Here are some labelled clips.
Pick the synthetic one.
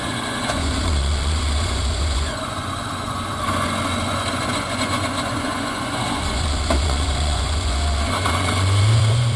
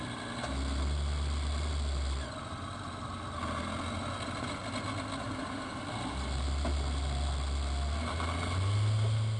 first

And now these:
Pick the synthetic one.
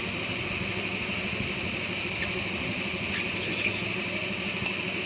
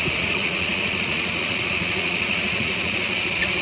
second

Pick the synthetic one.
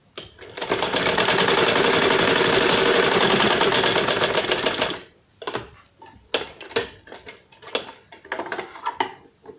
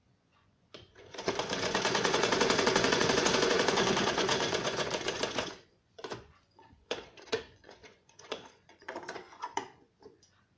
second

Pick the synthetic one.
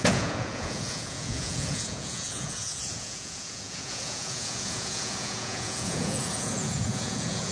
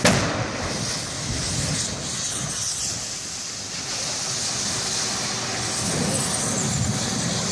first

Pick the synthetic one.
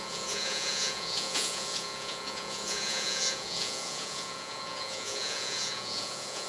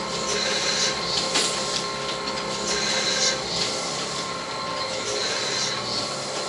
first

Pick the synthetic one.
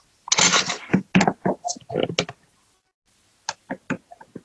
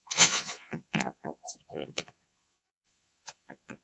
second